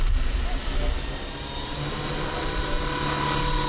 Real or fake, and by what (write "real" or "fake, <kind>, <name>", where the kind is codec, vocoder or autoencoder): real